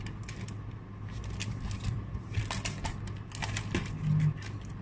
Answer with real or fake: real